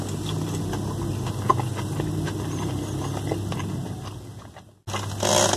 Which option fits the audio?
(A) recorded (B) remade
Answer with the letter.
A